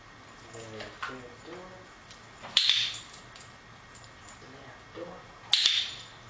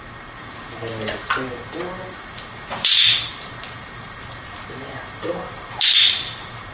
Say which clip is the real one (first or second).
first